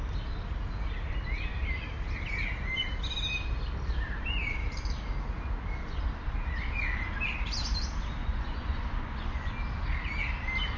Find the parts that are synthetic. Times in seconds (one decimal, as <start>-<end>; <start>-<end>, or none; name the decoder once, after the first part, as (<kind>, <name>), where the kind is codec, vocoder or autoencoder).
8.2-9.5 (vocoder, Vocos)